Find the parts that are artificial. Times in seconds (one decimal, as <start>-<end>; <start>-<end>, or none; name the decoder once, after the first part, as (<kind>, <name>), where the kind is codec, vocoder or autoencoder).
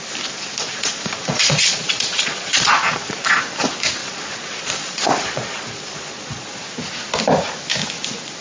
0.7-3.4 (vocoder, Vocos); 4.0-6.6